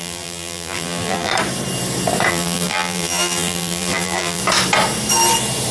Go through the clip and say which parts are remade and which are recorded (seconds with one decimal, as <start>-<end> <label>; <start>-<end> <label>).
0.0-1.3 remade; 1.3-2.3 recorded; 2.3-4.4 remade; 4.4-5.7 recorded